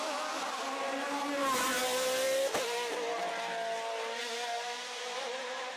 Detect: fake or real real